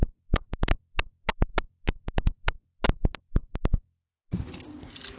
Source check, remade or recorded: recorded